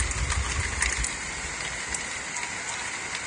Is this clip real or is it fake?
real